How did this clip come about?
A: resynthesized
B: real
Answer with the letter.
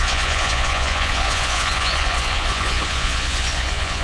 A